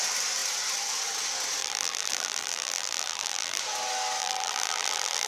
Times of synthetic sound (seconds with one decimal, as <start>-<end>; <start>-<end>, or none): 1.6-3.6; 4.2-5.3

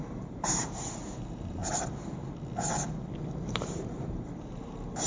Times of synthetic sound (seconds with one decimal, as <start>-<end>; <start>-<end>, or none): 0.0-1.6; 3.5-5.1